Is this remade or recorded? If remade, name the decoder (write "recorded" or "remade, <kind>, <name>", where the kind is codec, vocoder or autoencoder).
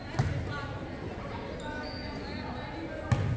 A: recorded